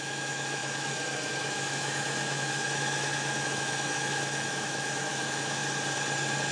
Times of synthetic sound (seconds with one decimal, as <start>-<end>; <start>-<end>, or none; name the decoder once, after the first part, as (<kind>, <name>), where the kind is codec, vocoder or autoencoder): 0.0-5.6 (autoencoder, DAC-VAE)